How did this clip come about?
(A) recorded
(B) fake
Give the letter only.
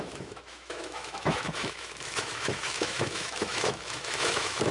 B